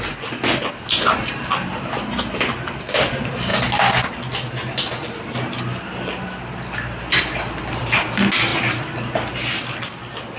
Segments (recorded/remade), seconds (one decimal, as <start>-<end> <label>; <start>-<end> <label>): 0.0-10.4 recorded